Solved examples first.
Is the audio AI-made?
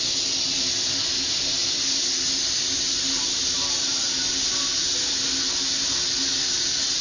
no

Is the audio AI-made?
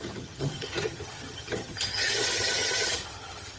yes